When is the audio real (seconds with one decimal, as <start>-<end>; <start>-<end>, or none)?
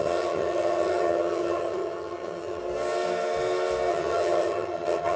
2.6-3.9